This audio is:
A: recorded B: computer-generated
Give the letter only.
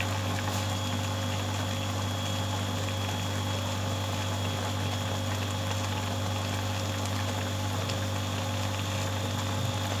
A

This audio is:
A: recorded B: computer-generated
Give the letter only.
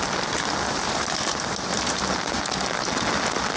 B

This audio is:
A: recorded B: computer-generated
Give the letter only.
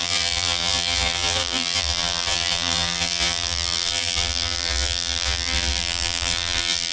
B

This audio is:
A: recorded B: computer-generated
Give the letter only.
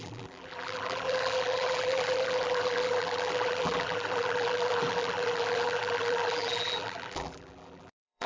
B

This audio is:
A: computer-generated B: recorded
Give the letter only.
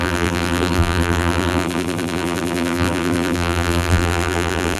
A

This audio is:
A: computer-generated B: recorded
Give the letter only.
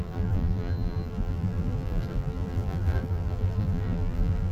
A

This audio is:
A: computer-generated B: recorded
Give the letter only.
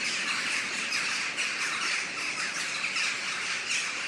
B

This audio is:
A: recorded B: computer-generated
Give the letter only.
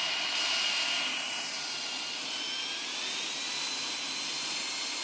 A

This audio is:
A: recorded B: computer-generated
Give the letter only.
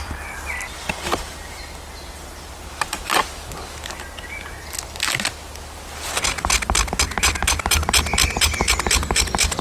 A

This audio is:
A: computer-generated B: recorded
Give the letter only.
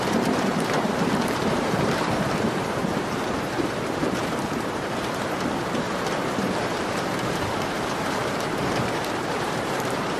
A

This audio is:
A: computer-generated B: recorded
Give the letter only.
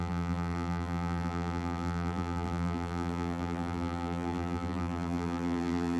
A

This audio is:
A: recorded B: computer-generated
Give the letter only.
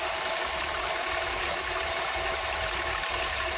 B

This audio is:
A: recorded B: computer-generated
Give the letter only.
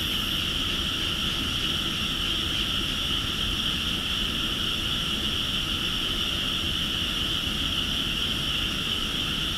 A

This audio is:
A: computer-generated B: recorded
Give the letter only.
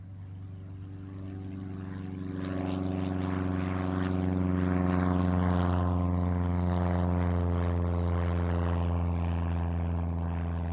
B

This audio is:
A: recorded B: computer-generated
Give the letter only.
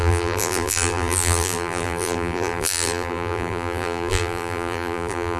B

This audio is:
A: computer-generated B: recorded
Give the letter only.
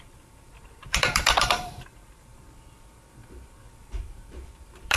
A